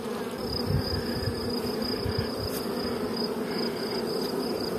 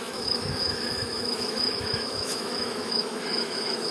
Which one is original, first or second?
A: first